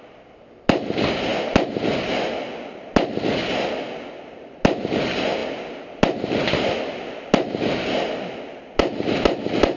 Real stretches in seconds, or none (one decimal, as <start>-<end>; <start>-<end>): 0.0-9.8